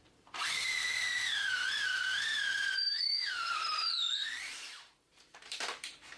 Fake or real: fake